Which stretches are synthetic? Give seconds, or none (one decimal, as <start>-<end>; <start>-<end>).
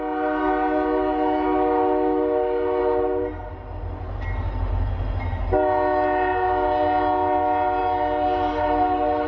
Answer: none